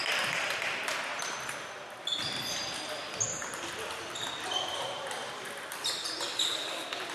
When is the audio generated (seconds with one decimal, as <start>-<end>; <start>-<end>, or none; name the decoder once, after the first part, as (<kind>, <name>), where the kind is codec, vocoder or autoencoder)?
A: none